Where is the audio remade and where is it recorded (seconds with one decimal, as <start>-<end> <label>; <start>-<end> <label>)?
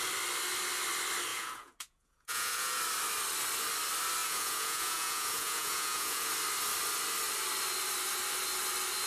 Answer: 0.0-1.3 recorded; 1.3-2.8 remade; 2.8-4.2 recorded; 4.2-6.3 remade; 6.3-9.1 recorded